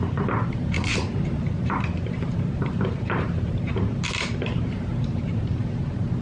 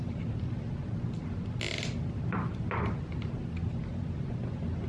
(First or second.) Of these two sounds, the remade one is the first